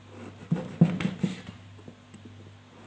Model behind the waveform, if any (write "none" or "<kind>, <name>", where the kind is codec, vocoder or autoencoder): none